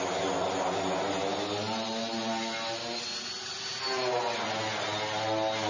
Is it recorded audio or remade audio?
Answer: recorded